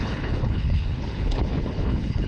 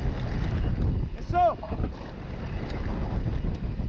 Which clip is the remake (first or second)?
first